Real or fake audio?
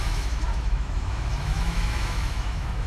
fake